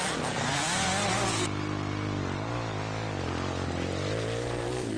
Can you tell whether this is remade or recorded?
recorded